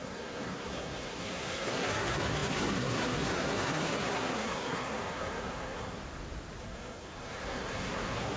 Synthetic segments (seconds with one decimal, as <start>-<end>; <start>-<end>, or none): 0.0-6.0; 6.6-8.4